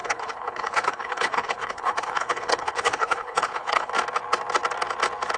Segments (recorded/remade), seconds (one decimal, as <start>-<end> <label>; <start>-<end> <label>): 0.0-3.9 remade; 3.9-5.4 recorded